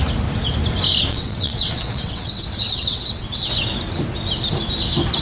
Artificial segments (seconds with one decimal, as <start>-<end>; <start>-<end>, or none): 1.1-3.5